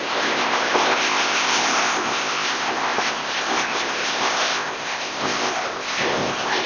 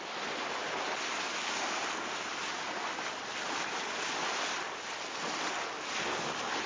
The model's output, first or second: first